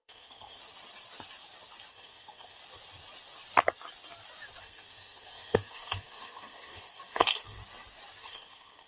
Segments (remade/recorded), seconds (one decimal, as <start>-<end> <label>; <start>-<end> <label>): 0.0-0.6 remade; 0.6-1.9 recorded; 1.9-2.6 remade; 2.6-4.6 recorded; 4.6-7.6 remade; 7.6-8.2 recorded; 8.2-8.9 remade

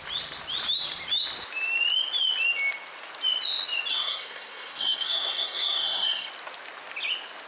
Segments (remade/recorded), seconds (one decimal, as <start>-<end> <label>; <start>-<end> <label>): 0.0-3.9 recorded; 3.9-6.3 remade; 6.3-7.5 recorded

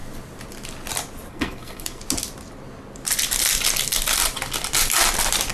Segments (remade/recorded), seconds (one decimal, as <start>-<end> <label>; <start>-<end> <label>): 0.0-1.3 recorded; 1.3-2.0 remade; 2.0-5.5 recorded

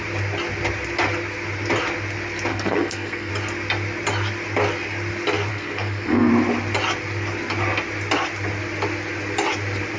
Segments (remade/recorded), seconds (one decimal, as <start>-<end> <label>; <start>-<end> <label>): 0.0-2.5 recorded; 2.5-3.3 remade; 3.3-5.5 recorded; 5.5-6.3 remade; 6.3-10.0 recorded